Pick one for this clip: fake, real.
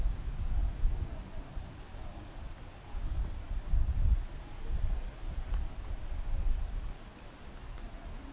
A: real